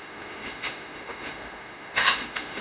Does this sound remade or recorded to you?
remade